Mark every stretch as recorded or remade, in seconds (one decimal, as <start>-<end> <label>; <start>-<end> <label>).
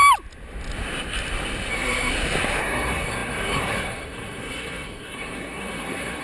0.0-1.7 recorded; 1.7-2.1 remade; 2.1-2.6 recorded; 2.6-6.2 remade